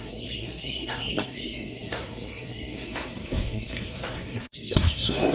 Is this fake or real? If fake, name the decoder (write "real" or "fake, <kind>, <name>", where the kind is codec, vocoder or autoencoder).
fake, codec, SNAC